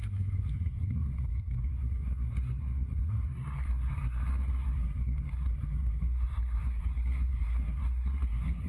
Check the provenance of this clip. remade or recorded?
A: remade